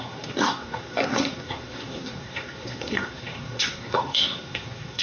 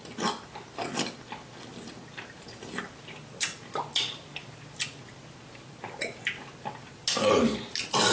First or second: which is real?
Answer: second